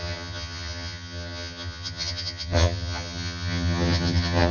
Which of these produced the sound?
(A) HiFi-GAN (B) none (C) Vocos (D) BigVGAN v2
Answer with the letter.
A